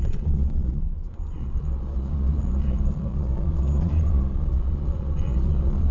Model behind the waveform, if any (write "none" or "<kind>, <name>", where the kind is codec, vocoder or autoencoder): vocoder, Vocos